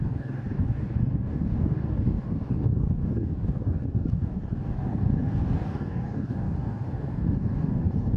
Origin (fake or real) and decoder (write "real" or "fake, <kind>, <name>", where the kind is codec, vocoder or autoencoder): fake, codec, DAC